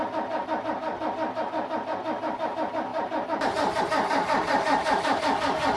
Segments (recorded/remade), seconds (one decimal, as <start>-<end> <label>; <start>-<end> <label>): 0.0-2.9 recorded; 2.9-3.8 remade; 3.8-5.8 recorded